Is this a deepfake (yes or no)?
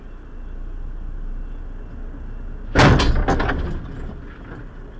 no